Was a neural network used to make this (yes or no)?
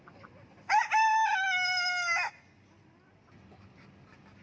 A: no